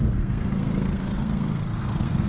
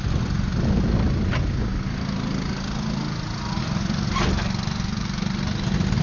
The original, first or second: second